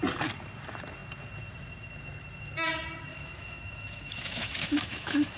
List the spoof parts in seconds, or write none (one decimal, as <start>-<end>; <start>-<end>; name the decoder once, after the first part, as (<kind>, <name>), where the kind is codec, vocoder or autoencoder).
3.1-5.4 (autoencoder, DAC-VAE)